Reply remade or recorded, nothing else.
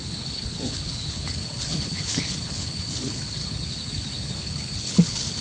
remade